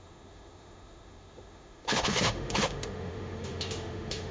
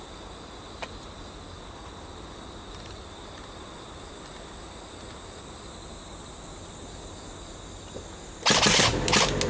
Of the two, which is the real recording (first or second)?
second